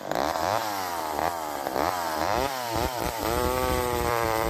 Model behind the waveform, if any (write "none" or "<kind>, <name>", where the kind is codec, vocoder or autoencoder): vocoder, BigVGAN v2